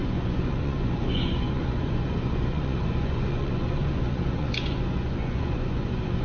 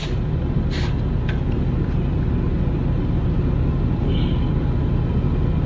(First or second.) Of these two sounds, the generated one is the first